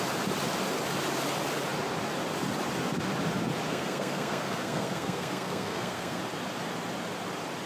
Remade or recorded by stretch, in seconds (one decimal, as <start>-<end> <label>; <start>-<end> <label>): 0.0-3.7 recorded; 3.7-6.2 remade; 6.2-7.7 recorded